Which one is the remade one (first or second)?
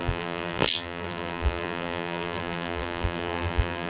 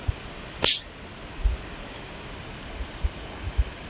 first